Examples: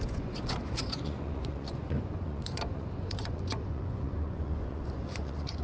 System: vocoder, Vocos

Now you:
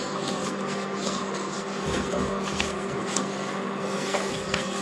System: codec, SNAC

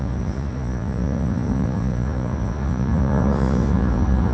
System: vocoder, Vocos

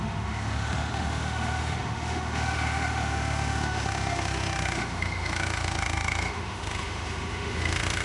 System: autoencoder, DAC-VAE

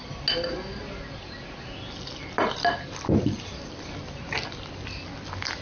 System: none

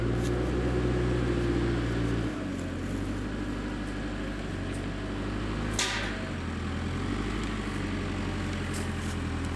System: none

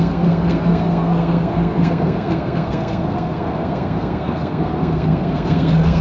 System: codec, SNAC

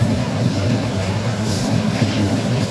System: codec, SNAC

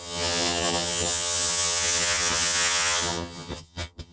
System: vocoder, HiFi-GAN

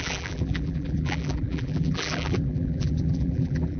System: vocoder, BigVGAN v2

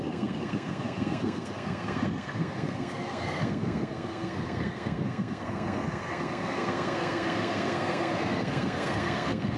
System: codec, SNAC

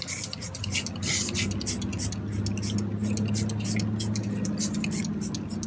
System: none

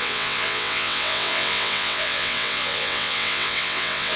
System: vocoder, WaveNeXt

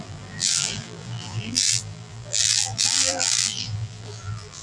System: vocoder, BigVGAN v2